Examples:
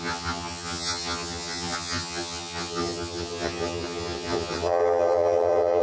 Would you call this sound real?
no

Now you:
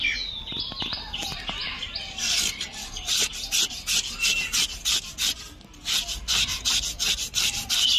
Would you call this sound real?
yes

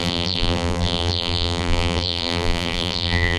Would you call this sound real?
no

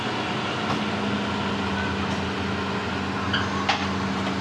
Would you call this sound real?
yes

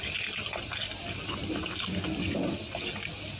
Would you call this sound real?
yes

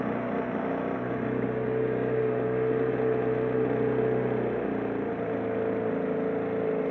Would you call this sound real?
yes